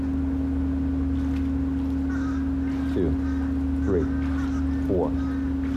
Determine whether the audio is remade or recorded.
recorded